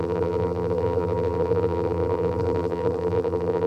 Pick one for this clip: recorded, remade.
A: remade